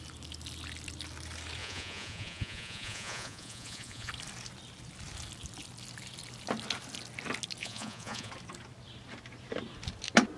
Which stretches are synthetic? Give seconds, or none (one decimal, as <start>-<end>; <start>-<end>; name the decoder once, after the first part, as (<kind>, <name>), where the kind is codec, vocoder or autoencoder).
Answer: 1.6-4.1 (vocoder, Vocos); 7.6-8.3